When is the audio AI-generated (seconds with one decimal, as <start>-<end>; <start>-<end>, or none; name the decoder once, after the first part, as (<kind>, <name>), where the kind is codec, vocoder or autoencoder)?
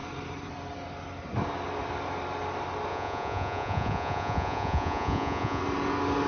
2.9-5.6 (vocoder, Vocos)